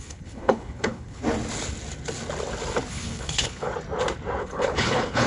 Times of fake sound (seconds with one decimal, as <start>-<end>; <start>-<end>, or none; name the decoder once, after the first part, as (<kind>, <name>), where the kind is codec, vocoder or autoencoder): 0.0-1.2 (codec, HILCodec); 2.9-3.7; 4.4-5.3